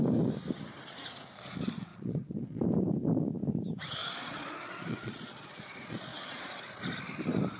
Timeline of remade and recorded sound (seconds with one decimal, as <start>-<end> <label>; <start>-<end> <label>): 0.0-1.9 recorded; 1.9-2.6 remade; 2.6-4.0 recorded; 4.0-6.8 remade; 6.8-7.6 recorded